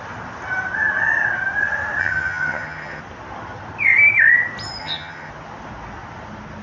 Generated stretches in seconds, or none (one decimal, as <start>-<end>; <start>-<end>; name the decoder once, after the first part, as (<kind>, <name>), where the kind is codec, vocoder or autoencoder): 2.0-3.0 (vocoder, HiFi-GAN); 4.8-5.3